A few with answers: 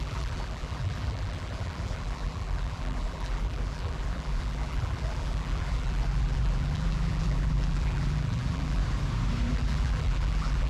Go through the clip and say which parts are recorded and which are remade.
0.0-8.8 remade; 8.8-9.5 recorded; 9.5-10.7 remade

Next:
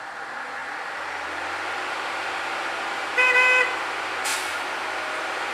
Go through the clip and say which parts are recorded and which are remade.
0.0-4.3 remade; 4.3-5.1 recorded; 5.1-5.5 remade

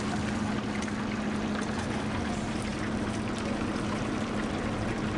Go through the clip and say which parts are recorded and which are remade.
0.0-5.2 recorded

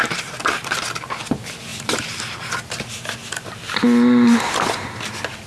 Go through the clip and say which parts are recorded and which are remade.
0.0-1.7 recorded; 1.7-2.4 remade; 2.4-5.5 recorded

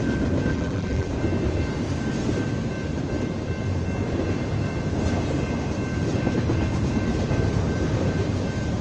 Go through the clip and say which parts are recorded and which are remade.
0.0-0.5 recorded; 0.5-1.1 remade; 1.1-8.8 recorded

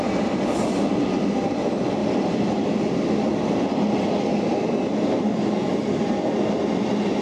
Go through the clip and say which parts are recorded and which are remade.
0.0-7.2 recorded

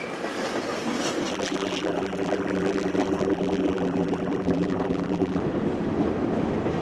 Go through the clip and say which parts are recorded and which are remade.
0.0-1.3 recorded; 1.3-5.4 remade; 5.4-6.8 recorded